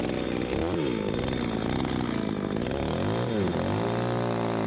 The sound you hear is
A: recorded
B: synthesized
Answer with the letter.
A